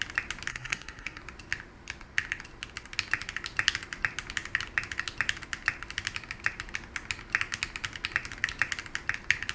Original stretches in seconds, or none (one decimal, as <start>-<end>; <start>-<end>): 0.0-0.5; 1.2-9.5